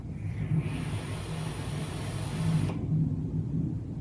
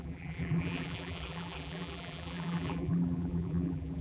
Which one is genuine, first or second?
first